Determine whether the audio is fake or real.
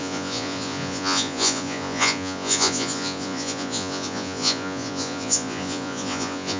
fake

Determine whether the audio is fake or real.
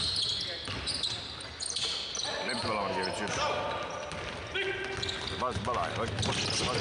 real